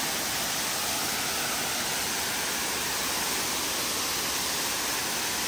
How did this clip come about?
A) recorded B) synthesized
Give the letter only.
A